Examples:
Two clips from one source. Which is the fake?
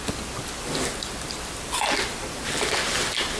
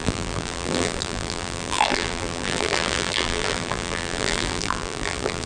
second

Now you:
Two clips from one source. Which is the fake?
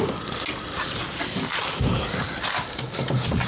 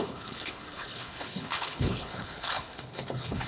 second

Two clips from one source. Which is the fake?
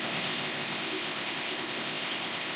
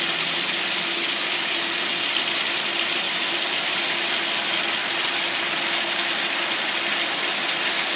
first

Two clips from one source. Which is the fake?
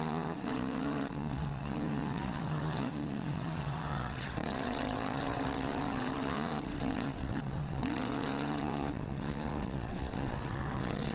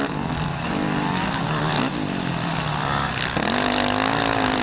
first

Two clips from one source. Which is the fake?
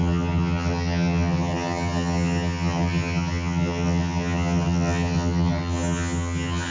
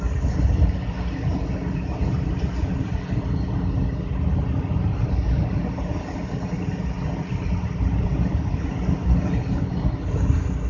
first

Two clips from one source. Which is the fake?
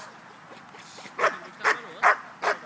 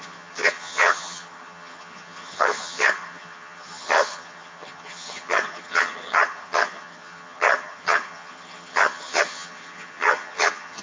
second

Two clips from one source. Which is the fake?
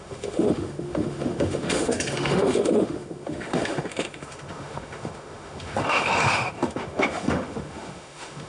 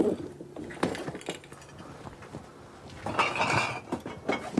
first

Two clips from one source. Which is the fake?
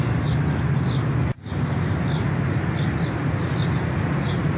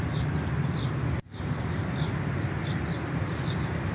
second